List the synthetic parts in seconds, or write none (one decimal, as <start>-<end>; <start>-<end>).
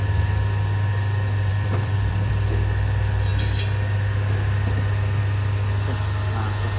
1.5-2.3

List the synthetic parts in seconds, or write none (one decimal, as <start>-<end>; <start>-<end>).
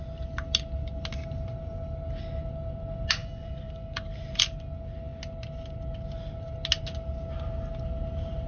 3.2-4.3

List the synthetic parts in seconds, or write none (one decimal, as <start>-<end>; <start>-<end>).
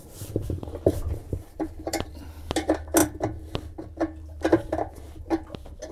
0.0-2.1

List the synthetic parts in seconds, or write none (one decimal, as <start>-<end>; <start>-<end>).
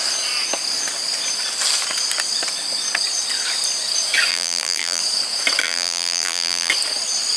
4.3-5.0; 5.6-6.7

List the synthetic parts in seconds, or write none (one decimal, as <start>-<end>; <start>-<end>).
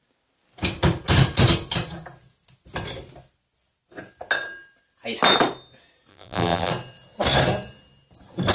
6.1-6.7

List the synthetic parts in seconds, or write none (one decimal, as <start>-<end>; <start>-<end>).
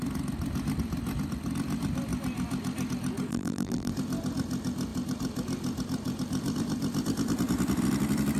3.3-3.9